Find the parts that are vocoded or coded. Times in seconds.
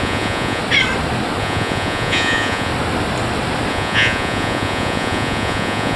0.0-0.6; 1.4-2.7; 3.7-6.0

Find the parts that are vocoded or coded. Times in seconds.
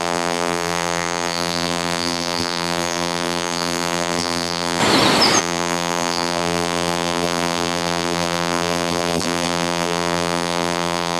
0.0-4.8; 5.4-11.2